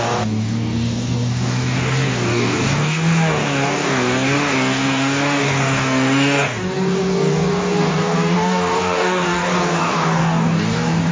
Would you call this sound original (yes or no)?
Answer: no